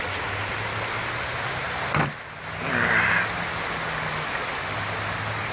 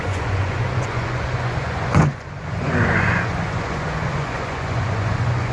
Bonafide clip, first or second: first